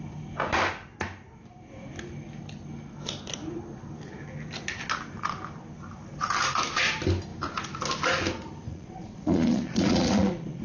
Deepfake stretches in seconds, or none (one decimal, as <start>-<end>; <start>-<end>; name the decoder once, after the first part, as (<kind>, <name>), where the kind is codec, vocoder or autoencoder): 8.7-10.6 (vocoder, Vocos)